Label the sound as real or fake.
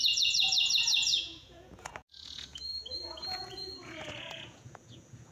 fake